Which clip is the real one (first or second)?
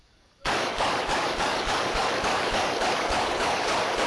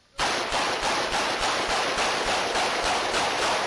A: second